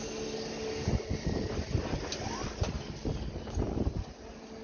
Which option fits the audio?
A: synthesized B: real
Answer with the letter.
B